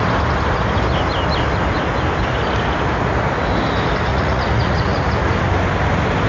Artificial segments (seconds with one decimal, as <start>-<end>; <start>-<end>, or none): 4.1-5.1